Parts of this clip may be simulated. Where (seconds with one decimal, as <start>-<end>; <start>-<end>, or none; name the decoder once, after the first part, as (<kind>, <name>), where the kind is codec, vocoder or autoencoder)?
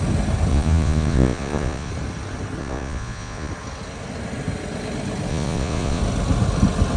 0.5-1.9 (vocoder, Vocos); 2.6-3.5; 5.3-6.0